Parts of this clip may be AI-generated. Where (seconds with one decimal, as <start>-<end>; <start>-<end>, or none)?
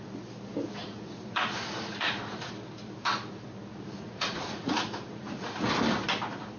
0.8-2.5; 3.7-5.7